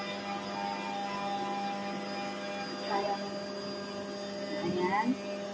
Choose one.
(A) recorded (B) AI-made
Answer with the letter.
A